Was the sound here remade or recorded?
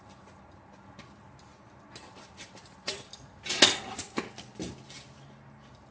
recorded